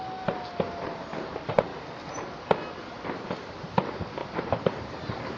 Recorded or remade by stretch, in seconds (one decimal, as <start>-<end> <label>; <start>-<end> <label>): 0.0-4.2 recorded; 4.2-5.4 remade